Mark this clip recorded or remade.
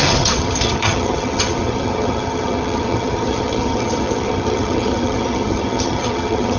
remade